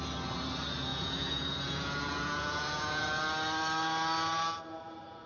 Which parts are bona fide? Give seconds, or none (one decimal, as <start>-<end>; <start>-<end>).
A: 0.0-0.9; 3.2-5.3